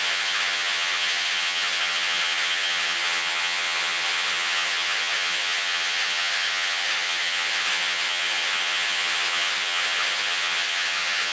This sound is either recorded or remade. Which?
remade